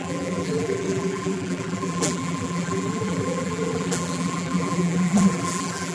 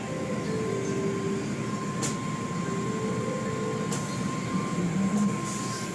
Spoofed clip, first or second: first